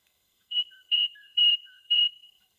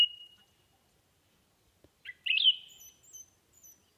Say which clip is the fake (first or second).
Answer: first